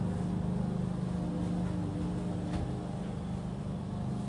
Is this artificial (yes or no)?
no